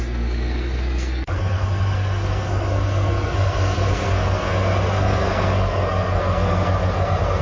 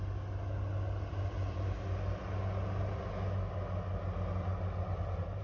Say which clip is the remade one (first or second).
first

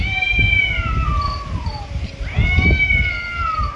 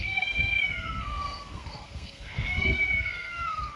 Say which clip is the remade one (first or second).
second